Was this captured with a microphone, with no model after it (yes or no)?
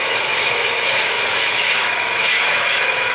no